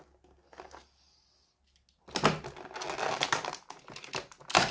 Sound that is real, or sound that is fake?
real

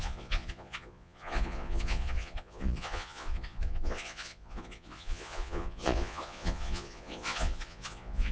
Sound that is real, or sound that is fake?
fake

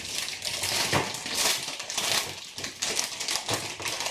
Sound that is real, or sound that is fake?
real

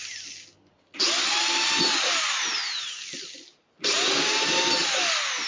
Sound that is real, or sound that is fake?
real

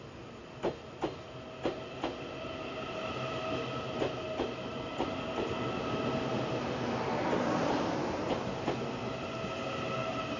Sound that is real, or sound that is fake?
real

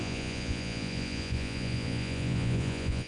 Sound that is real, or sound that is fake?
fake